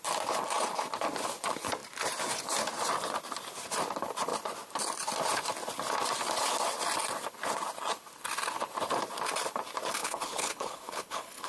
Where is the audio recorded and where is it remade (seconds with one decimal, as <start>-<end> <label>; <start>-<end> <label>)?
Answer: 0.0-10.0 recorded; 10.0-11.5 remade